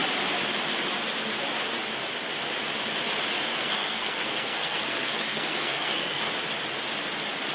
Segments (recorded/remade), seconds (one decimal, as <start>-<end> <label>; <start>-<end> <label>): 0.0-3.5 recorded; 3.5-6.3 remade; 6.3-7.5 recorded